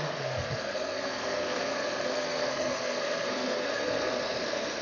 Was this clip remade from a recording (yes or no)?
yes